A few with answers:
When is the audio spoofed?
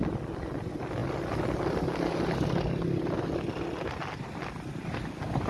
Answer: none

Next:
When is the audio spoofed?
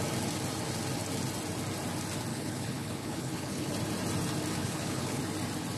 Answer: 2.3-3.7 (codec, HILCodec); 4.6-5.2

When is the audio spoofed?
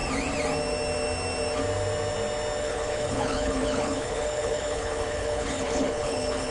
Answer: 2.6-6.5 (codec, HILCodec)